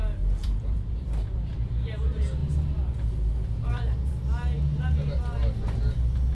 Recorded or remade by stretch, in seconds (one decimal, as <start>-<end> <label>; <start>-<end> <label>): 0.0-0.4 recorded; 0.4-1.5 remade; 1.5-6.3 recorded